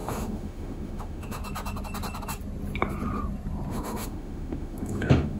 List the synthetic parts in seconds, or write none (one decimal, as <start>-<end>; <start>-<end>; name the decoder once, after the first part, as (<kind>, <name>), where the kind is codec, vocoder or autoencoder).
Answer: 0.0-1.4 (autoencoder, DAC-VAE); 3.7-5.4